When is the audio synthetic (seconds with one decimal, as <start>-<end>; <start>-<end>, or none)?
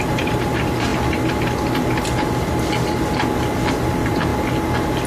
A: 0.0-0.9; 3.4-4.3